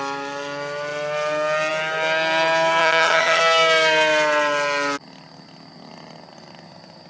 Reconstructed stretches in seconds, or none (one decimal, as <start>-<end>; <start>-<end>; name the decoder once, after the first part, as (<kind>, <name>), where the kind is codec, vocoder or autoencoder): 2.8-3.4 (vocoder, HiFi-GAN)